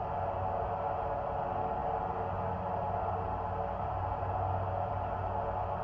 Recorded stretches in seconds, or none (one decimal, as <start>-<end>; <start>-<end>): 0.0-5.8